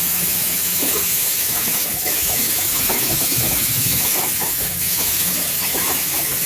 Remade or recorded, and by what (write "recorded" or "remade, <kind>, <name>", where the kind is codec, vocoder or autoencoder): remade, autoencoder, DAC-VAE